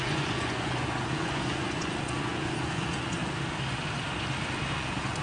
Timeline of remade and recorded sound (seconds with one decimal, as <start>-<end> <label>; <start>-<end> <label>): 0.0-3.2 remade; 3.2-4.7 recorded; 4.7-5.2 remade